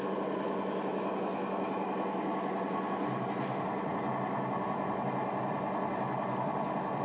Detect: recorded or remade recorded